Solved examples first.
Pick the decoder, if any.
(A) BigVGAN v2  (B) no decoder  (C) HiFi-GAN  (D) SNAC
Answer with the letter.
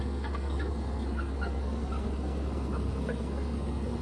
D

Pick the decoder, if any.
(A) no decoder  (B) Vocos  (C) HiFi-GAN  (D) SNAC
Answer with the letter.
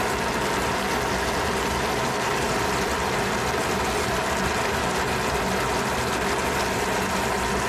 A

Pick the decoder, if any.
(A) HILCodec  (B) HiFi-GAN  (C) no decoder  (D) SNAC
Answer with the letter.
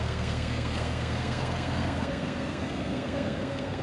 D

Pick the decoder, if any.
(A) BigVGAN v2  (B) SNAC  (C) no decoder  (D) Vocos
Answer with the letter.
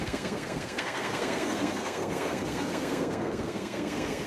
B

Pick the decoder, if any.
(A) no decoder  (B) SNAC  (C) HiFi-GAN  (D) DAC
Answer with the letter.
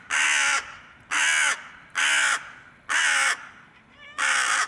A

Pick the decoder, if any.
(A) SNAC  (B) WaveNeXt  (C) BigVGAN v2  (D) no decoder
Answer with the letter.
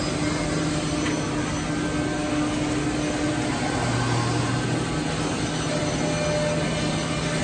D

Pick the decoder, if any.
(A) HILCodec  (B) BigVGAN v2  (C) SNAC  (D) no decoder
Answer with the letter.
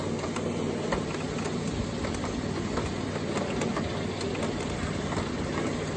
D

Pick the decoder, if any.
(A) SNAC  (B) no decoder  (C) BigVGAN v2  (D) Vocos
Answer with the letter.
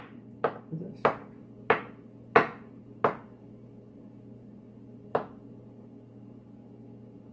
B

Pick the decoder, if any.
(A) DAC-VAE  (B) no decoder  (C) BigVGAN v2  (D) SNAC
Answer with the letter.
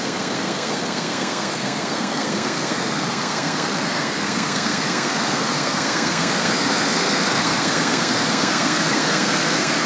D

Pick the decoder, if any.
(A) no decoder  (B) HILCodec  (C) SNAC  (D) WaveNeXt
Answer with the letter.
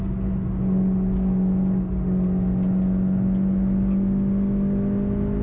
A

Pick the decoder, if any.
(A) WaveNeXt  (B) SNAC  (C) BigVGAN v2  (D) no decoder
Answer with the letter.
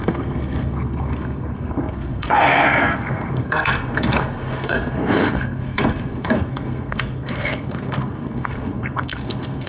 B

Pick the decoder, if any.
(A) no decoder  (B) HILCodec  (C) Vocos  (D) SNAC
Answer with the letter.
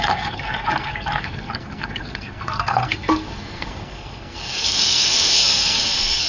D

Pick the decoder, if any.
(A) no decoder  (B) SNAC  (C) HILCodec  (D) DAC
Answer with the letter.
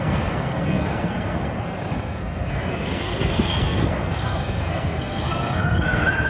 B